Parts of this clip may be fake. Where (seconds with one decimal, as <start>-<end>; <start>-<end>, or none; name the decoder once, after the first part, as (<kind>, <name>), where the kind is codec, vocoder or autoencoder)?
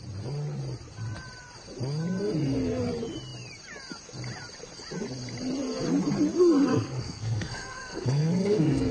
6.7-8.9 (codec, SNAC)